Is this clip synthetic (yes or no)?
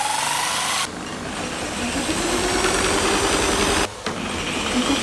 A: no